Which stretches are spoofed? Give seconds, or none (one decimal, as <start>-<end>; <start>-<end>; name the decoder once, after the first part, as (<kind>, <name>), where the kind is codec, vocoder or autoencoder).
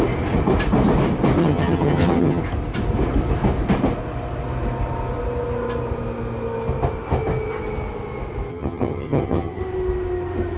1.4-2.4 (vocoder, HiFi-GAN); 8.5-9.6